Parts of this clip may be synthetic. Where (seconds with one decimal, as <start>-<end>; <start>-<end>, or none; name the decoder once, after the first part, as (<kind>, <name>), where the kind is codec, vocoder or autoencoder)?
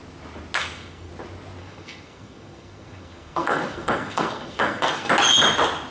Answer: 0.6-1.1 (codec, SNAC); 1.6-5.1